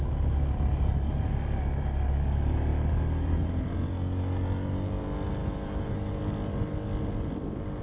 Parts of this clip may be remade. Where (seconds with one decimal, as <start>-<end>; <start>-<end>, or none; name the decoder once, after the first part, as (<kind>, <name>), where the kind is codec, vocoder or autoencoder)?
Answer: 5.4-6.1 (autoencoder, DAC-VAE)